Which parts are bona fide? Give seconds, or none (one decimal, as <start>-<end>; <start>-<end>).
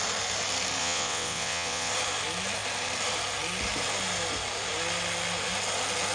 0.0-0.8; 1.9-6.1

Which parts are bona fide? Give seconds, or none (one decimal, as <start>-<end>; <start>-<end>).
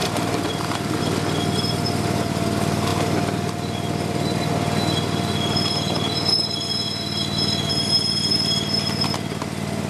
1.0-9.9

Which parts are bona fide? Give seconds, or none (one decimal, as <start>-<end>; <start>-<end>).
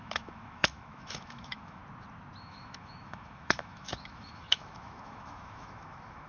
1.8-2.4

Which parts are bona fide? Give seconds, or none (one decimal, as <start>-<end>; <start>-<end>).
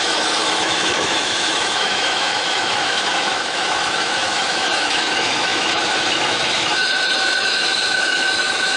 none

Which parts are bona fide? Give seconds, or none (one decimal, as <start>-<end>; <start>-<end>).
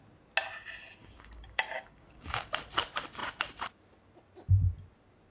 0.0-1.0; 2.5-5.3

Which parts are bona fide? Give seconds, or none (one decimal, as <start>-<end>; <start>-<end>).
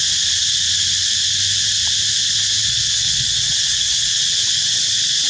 0.0-2.6; 4.6-5.3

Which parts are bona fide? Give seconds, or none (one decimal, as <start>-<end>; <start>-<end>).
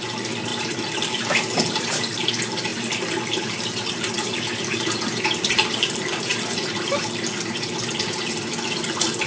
0.0-0.5; 2.3-2.7; 7.2-9.3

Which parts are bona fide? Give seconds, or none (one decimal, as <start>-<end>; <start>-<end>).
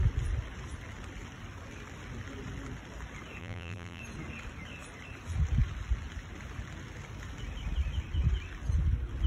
0.0-3.4; 4.0-9.3